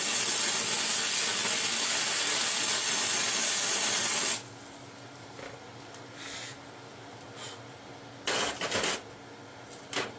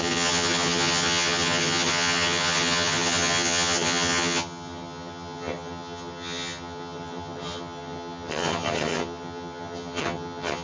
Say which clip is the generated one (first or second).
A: second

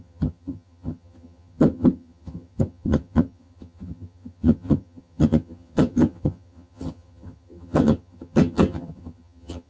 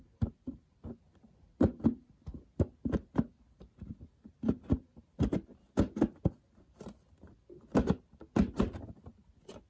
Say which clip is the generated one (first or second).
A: first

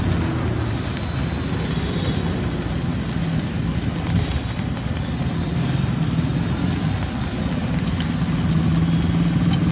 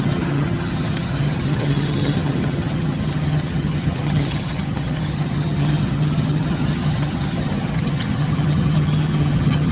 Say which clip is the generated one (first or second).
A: second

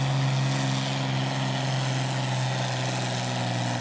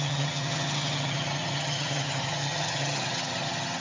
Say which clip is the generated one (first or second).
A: second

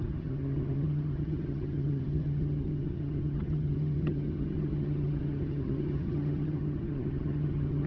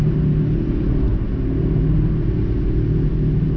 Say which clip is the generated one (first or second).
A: first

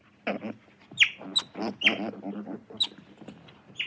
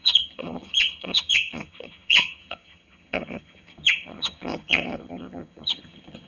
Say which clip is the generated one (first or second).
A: second